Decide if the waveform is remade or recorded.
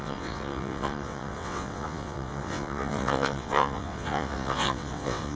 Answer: remade